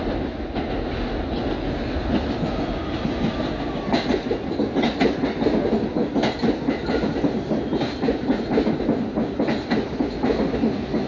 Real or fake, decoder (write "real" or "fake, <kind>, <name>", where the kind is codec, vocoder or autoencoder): real